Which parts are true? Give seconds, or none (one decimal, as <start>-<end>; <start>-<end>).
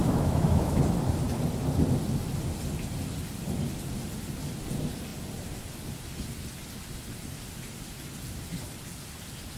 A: 0.8-9.6